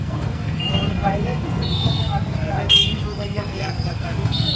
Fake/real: fake